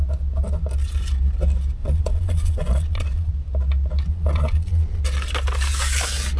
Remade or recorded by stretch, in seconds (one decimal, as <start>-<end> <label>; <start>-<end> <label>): 0.0-1.8 recorded; 1.8-3.3 remade; 3.3-4.1 recorded; 4.1-5.0 remade; 5.0-6.4 recorded